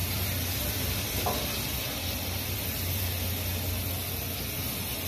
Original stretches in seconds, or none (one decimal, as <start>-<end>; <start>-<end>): 3.1-5.1